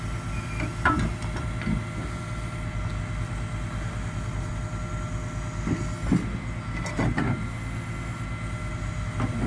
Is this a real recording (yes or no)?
yes